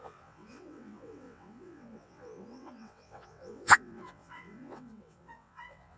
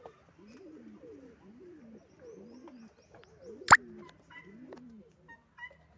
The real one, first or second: second